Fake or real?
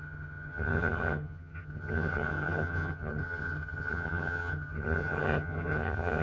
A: fake